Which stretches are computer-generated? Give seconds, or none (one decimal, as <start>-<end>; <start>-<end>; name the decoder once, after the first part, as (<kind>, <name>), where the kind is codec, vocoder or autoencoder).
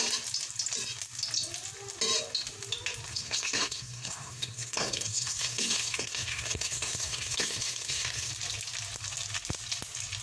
3.1-8.3 (codec, SNAC)